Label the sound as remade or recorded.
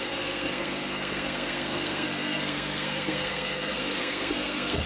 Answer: remade